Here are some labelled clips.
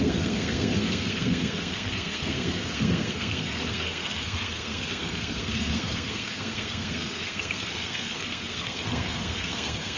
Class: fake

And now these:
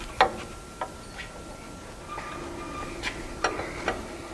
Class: real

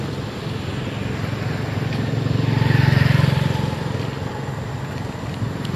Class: real